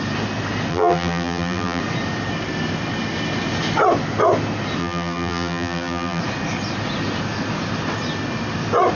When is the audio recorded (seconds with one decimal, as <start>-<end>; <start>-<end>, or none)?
0.0-0.7; 1.8-4.8; 6.2-9.0